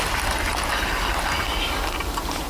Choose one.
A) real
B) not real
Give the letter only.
A